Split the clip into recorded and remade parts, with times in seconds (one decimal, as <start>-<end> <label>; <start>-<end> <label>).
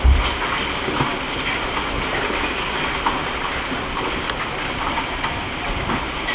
0.0-6.3 recorded